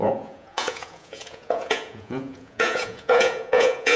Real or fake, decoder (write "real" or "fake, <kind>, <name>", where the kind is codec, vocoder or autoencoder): fake, vocoder, Vocos